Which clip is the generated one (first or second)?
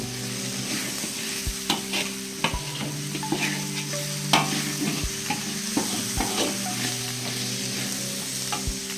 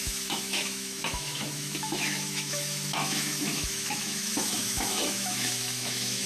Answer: second